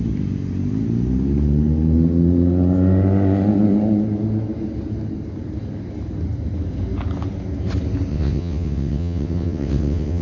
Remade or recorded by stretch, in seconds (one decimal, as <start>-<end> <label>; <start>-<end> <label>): 0.0-8.1 recorded; 8.1-10.2 remade